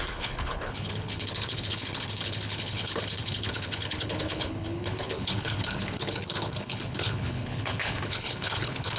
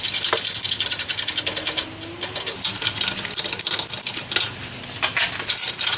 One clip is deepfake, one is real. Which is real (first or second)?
second